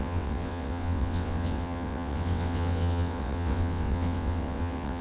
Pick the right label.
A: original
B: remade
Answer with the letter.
B